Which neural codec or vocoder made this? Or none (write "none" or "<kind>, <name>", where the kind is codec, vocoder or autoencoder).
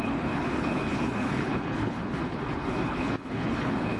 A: codec, HILCodec